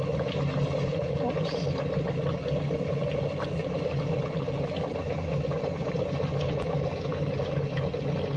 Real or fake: real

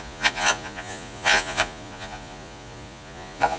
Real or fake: fake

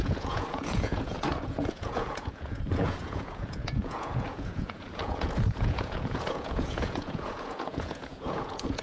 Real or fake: fake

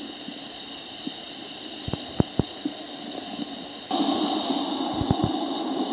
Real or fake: real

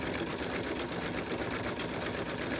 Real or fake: real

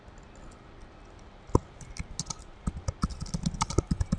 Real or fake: real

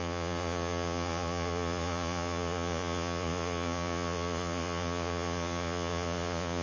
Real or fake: fake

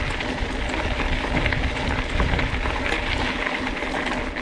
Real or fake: real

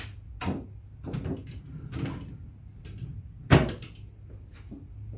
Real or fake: real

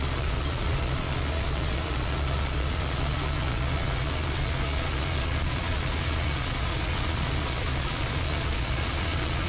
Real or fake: fake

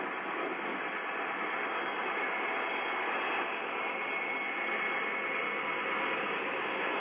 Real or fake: real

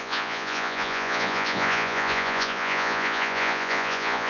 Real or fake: fake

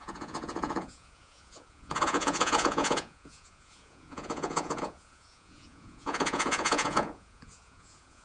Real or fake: fake